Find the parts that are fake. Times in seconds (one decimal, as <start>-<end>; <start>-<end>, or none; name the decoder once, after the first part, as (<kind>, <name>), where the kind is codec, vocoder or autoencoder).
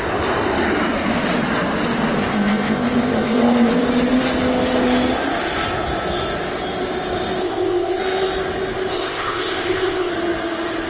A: 2.2-3.7 (codec, ZipCodec); 7.4-8.0; 8.9-10.1